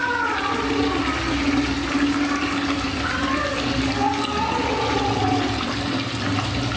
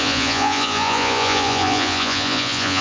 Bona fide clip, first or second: first